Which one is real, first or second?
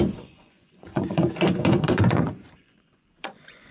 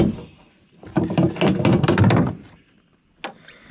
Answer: second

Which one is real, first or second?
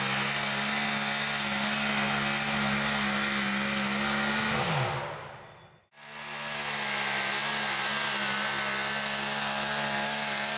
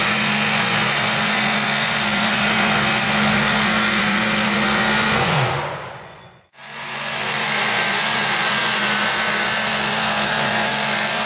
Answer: first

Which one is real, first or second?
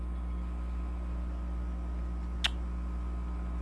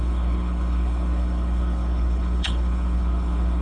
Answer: first